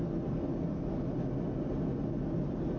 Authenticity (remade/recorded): recorded